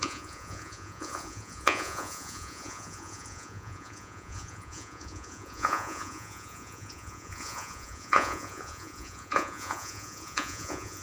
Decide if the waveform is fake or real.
fake